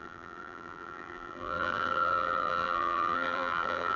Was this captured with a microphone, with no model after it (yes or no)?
no